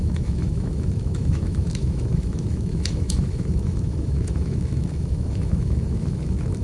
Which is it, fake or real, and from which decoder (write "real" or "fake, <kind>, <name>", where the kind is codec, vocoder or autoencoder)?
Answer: fake, autoencoder, DAC-VAE